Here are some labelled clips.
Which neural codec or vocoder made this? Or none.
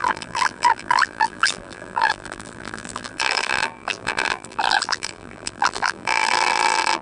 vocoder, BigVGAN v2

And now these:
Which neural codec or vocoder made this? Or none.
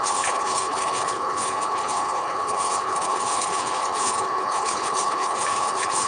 codec, HILCodec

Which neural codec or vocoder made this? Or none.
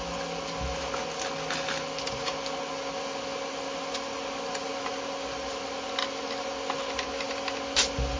none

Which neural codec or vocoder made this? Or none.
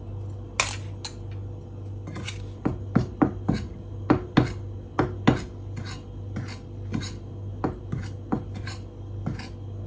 none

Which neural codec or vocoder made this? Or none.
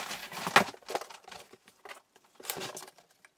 none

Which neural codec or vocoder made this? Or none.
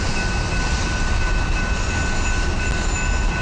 none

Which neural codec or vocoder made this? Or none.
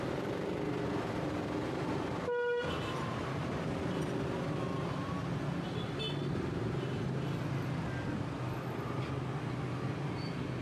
none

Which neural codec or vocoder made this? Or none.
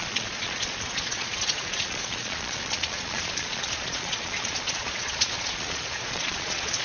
vocoder, Vocos